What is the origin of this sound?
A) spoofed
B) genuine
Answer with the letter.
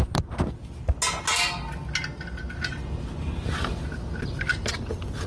B